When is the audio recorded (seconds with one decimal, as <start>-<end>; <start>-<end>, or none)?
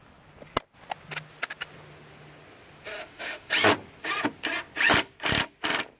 0.0-3.0; 3.5-6.0